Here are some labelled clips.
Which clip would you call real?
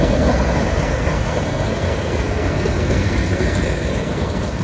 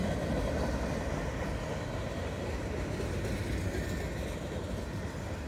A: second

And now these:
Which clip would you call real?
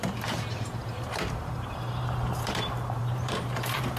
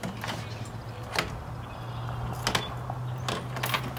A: second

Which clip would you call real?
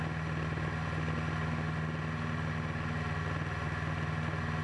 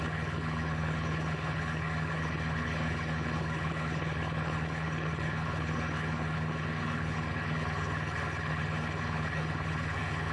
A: first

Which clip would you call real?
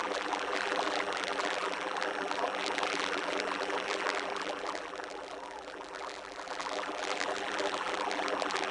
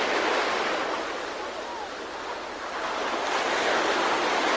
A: second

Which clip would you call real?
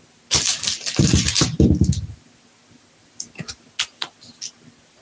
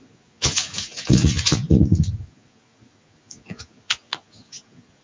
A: first